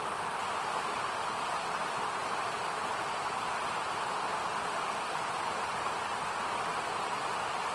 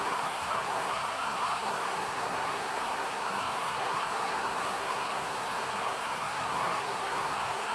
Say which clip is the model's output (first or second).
second